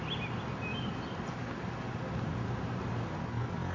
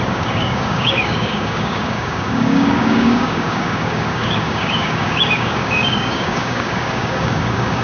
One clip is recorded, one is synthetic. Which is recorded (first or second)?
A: first